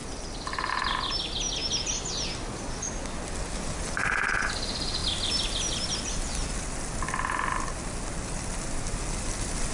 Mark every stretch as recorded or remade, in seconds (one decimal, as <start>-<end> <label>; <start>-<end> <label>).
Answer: 0.0-9.7 recorded